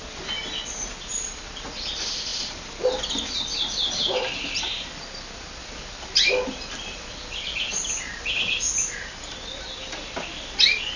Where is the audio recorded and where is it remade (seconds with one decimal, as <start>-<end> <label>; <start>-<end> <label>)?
0.0-2.3 recorded; 2.3-3.0 remade; 3.0-5.6 recorded; 5.6-8.6 remade; 8.6-11.0 recorded